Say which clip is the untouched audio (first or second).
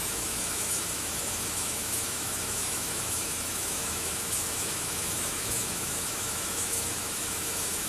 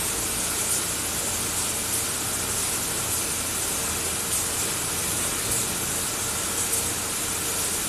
second